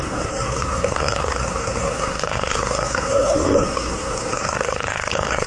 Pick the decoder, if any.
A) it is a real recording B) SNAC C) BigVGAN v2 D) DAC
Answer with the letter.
B